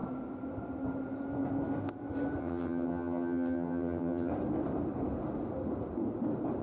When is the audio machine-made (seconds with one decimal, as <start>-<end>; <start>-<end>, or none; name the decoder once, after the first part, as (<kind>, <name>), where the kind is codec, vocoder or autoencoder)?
2.4-4.3 (vocoder, HiFi-GAN)